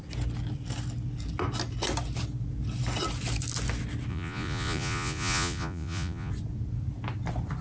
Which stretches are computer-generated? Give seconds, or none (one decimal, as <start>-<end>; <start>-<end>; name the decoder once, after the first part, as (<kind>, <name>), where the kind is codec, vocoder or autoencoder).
4.1-6.3 (vocoder, Vocos)